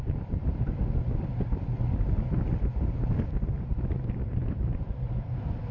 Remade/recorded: recorded